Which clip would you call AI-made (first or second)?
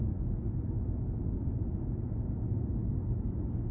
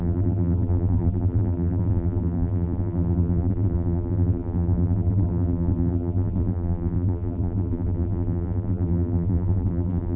second